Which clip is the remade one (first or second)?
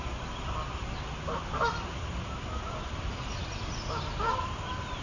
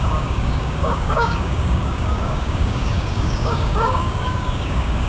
second